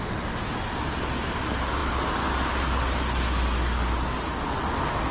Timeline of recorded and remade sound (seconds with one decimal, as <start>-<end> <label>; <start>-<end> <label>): 0.0-5.1 recorded